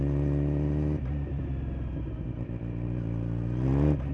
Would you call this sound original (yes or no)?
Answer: yes